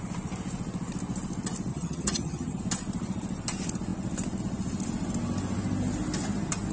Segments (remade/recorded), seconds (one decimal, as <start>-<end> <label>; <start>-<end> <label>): 0.0-1.7 recorded; 1.7-2.6 remade; 2.6-6.7 recorded